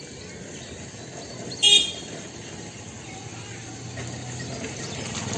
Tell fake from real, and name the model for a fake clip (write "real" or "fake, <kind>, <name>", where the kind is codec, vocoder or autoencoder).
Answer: real